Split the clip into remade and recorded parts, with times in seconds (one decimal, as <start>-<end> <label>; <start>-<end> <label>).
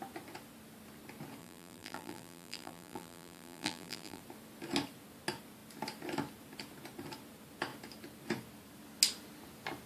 0.0-1.4 recorded; 1.4-4.2 remade; 4.2-9.9 recorded